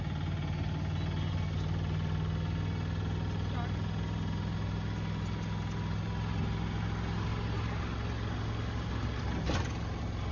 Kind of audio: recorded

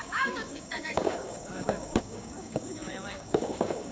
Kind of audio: remade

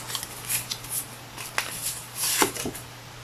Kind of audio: recorded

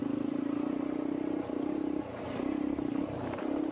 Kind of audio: remade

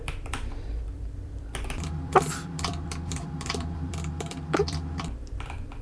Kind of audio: remade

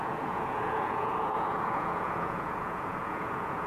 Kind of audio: remade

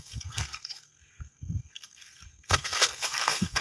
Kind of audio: remade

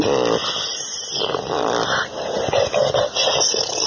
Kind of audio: recorded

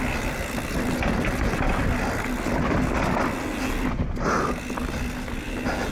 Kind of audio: recorded